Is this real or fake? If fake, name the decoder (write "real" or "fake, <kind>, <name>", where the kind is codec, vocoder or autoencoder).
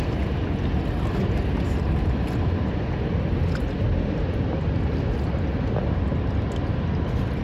real